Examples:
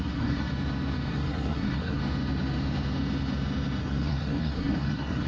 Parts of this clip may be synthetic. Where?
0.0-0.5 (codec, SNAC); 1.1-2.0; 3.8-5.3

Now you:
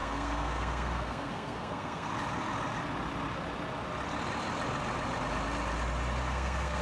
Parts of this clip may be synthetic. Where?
0.0-2.1 (codec, SNAC); 6.2-6.8

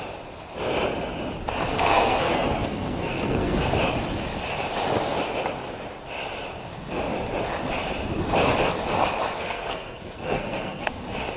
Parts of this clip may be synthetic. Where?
1.7-3.6 (codec, SNAC); 9.3-11.0

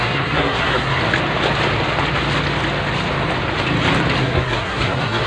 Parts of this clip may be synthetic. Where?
0.0-1.0 (codec, SNAC); 4.2-5.3

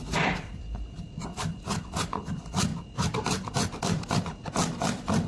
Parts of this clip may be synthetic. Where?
none

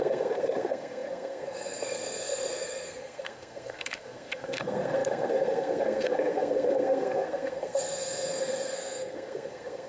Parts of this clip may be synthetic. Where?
0.0-9.9 (codec, SNAC)

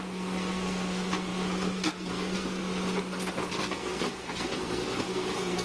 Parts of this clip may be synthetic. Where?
0.0-2.6 (codec, SNAC); 3.5-5.6